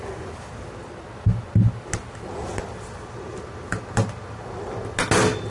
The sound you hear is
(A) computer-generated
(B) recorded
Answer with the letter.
B